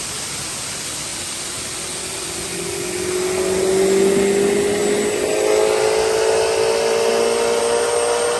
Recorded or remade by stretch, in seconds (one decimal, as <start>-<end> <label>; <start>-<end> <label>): 0.0-8.4 recorded